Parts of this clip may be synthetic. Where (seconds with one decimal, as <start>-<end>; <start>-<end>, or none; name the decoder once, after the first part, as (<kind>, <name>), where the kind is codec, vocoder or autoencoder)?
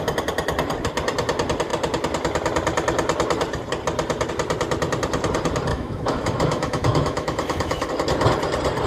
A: 5.7-7.9 (autoencoder, DAC-VAE)